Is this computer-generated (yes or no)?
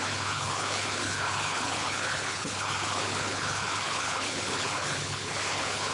yes